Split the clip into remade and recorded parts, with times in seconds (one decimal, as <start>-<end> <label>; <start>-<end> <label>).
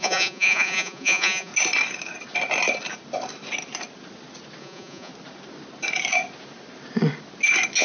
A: 0.0-1.5 remade; 1.5-4.6 recorded; 4.6-5.1 remade; 5.1-7.8 recorded